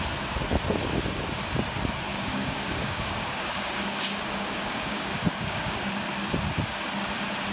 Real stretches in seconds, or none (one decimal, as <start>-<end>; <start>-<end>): 0.0-2.1; 5.9-7.5